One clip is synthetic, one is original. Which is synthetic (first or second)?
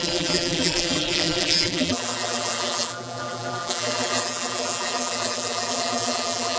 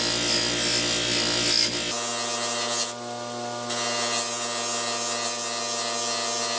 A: first